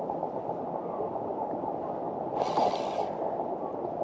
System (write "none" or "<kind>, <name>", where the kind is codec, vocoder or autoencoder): none